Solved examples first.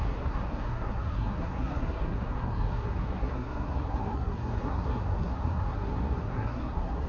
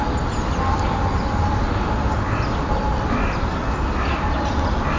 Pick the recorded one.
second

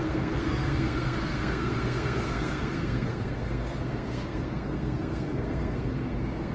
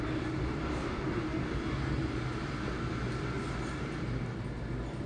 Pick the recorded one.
second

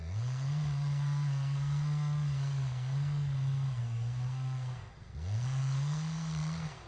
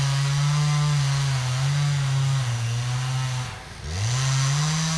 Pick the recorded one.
second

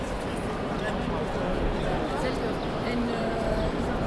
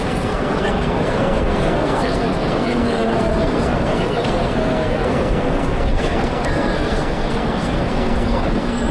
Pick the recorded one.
first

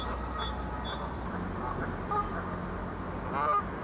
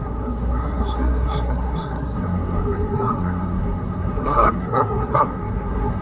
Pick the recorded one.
first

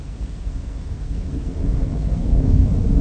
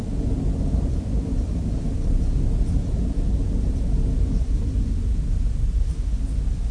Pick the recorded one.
second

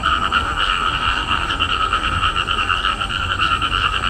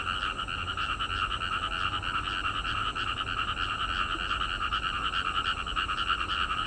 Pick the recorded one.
second